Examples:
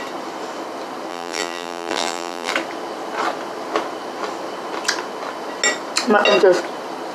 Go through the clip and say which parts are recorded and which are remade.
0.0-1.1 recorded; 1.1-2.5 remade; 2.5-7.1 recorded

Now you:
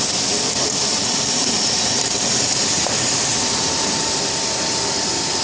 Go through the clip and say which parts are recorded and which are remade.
0.0-0.9 recorded; 0.9-4.1 remade; 4.1-5.4 recorded

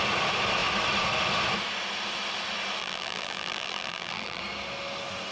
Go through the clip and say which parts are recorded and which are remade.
0.0-2.8 recorded; 2.8-4.4 remade; 4.4-5.3 recorded

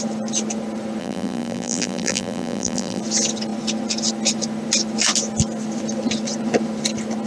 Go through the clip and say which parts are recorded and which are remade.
0.0-1.0 recorded; 1.0-3.0 remade; 3.0-7.3 recorded

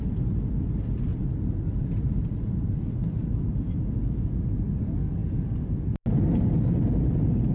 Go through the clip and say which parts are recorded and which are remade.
0.0-1.1 recorded; 1.1-4.8 remade; 4.8-5.2 recorded; 5.2-6.0 remade; 6.0-7.5 recorded

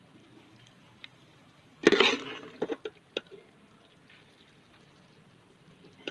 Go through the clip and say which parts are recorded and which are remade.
0.0-1.8 remade; 1.8-5.5 recorded; 5.5-6.1 remade

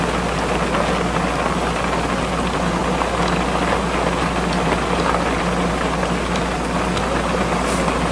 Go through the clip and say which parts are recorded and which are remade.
0.0-8.1 recorded